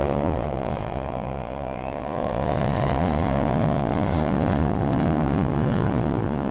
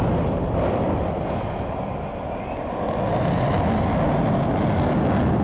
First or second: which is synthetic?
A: first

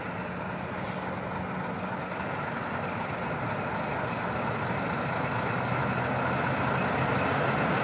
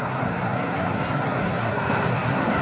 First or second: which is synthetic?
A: second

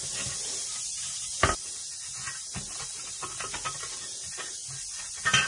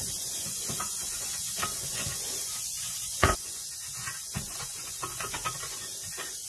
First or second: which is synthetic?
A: second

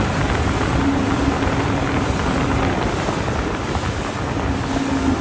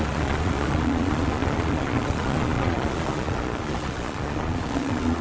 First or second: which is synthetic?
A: second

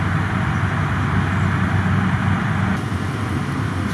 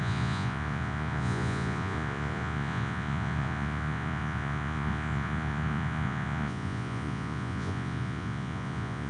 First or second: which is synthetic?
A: second